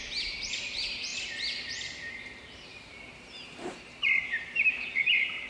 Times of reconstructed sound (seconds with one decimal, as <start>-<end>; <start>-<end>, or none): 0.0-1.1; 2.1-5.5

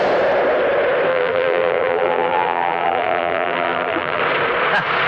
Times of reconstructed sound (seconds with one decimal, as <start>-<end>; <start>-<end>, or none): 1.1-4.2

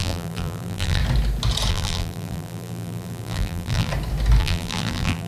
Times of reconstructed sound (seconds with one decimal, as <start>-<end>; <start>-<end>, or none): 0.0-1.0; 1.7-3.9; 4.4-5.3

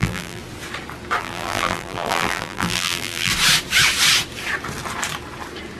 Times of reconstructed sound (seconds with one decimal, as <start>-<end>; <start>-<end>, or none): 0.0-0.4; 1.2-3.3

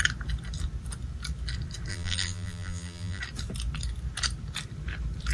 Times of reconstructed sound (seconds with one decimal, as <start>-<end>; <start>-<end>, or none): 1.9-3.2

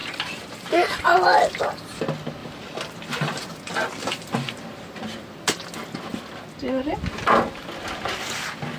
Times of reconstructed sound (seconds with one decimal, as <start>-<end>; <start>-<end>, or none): 0.0-2.0; 2.4-5.4